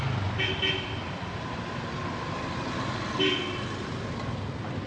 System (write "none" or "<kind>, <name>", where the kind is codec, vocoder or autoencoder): none